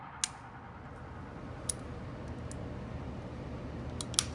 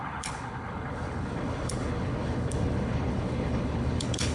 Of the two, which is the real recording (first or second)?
first